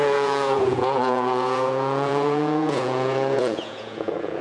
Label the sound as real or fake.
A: fake